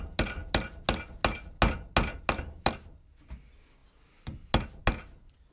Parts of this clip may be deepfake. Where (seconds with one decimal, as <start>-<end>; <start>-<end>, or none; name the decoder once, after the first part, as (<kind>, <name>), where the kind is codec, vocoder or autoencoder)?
none